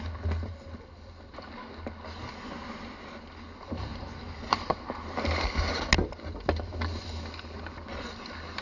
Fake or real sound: real